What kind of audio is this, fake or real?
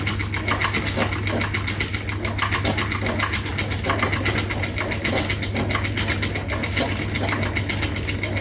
real